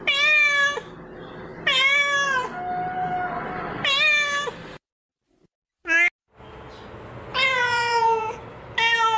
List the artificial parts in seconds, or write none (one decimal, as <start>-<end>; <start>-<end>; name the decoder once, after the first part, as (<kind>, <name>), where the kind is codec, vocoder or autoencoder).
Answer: 7.3-8.4 (vocoder, Vocos)